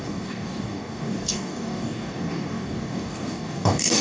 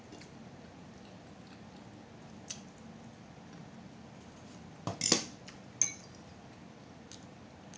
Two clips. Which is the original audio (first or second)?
second